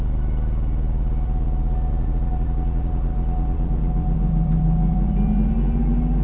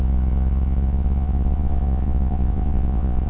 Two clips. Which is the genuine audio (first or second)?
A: first